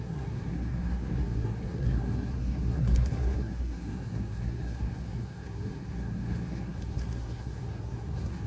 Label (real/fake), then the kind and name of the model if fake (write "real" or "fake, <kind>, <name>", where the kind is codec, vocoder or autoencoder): fake, codec, SNAC